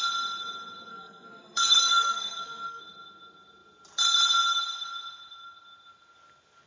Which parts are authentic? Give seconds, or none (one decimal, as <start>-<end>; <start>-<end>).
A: 0.0-0.9; 2.8-6.7